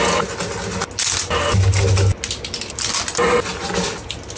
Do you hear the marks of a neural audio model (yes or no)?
no